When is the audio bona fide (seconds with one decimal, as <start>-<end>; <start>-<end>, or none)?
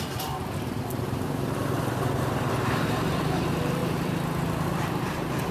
3.8-4.8